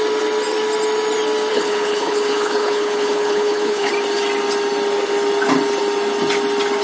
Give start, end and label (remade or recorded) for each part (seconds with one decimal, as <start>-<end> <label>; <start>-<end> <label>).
0.0-1.5 recorded; 1.5-3.9 remade; 3.9-6.8 recorded